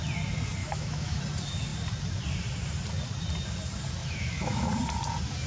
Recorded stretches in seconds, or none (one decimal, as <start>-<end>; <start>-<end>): 0.0-0.6; 1.2-4.0; 4.7-5.5